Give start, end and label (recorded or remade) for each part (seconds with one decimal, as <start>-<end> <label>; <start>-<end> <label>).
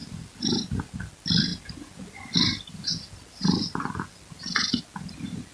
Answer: 0.0-5.5 recorded